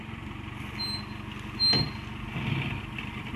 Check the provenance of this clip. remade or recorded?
recorded